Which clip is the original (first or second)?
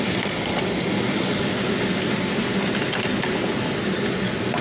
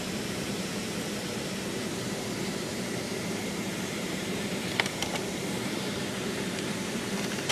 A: first